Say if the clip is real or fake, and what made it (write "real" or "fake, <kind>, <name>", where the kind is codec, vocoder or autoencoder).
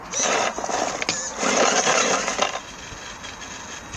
real